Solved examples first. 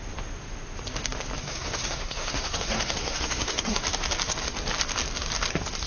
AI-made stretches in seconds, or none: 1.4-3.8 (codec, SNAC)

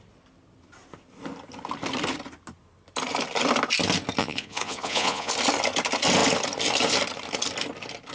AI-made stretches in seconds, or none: 4.2-5.3 (vocoder, Vocos)